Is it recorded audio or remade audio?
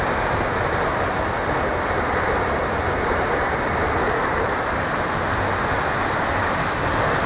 recorded